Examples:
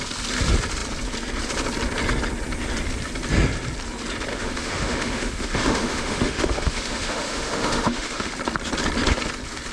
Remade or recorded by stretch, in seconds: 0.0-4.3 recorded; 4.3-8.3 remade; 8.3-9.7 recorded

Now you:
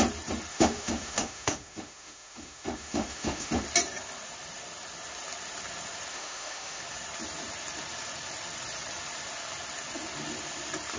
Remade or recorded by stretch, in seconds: 0.0-0.5 recorded; 0.5-3.5 remade; 3.5-6.1 recorded; 6.1-6.8 remade; 6.8-11.0 recorded